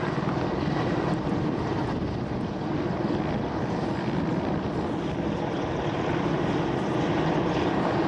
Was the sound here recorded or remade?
recorded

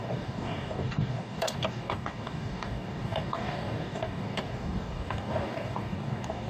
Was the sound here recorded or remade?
remade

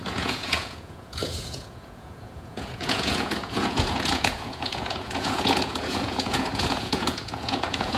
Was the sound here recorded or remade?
remade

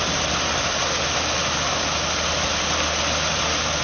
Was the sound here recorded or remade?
recorded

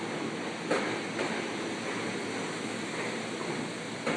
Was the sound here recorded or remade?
recorded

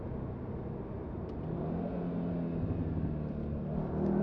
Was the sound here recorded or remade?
recorded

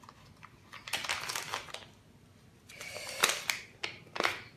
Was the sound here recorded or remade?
recorded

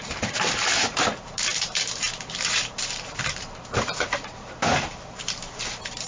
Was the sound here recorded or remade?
remade